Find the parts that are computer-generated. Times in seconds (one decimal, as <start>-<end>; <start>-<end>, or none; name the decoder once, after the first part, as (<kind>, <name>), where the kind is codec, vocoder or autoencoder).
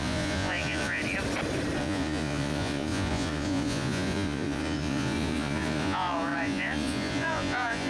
0.0-1.0 (vocoder, Vocos); 1.8-7.9